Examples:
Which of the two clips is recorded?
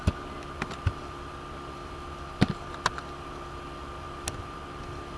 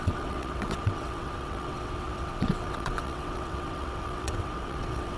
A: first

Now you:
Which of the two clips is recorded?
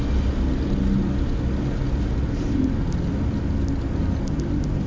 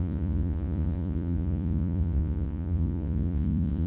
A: first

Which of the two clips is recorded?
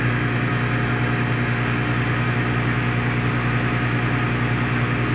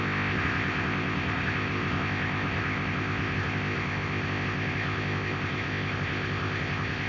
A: first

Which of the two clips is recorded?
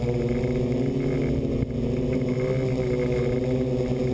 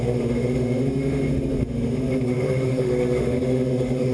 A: first